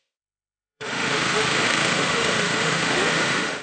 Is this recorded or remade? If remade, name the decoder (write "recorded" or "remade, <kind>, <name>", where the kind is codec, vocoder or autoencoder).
remade, autoencoder, DAC-VAE